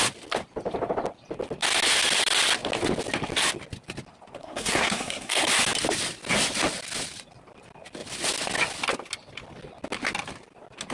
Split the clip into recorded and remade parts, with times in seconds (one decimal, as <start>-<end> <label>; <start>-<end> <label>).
0.0-4.4 recorded; 4.4-5.5 remade; 5.5-10.9 recorded